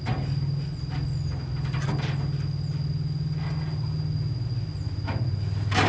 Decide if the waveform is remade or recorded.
recorded